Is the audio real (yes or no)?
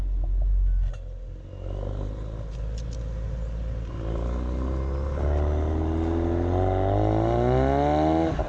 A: yes